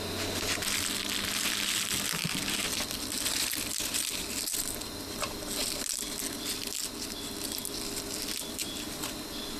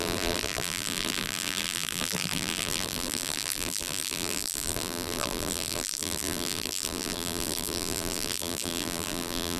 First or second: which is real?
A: first